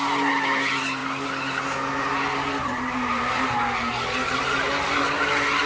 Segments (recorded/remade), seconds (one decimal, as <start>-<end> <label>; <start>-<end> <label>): 0.0-5.7 recorded